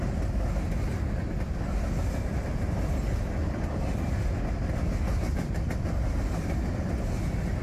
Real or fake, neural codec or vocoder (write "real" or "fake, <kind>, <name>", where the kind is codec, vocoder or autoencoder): real